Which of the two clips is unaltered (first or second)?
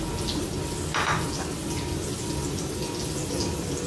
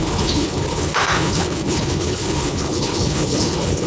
first